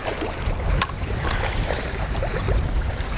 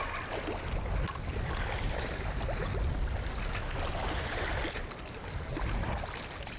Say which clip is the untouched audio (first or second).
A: second